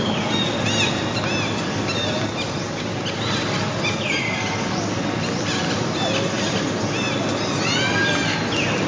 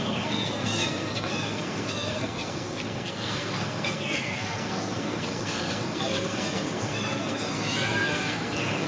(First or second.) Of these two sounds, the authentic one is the first